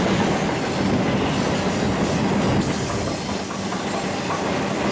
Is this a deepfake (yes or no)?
no